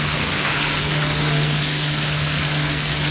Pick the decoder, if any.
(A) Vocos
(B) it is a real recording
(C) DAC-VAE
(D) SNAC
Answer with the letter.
D